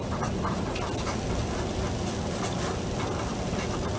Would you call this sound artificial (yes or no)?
no